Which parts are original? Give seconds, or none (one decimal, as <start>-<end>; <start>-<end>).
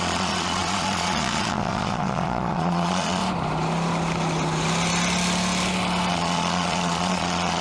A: 3.2-6.1